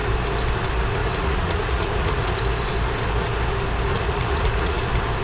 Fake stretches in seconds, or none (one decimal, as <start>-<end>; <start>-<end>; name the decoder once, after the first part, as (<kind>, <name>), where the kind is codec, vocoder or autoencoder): 1.0-2.4 (vocoder, Vocos); 3.9-4.8